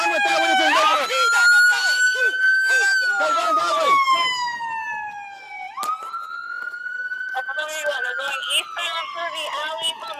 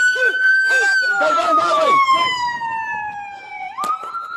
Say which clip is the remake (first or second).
second